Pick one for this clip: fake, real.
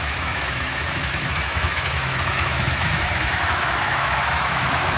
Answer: fake